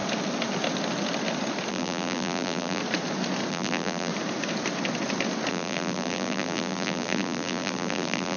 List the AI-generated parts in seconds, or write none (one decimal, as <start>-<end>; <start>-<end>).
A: 1.7-2.8; 3.5-4.1; 5.5-8.4